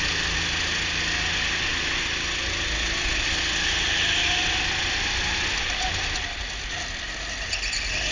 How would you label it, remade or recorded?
recorded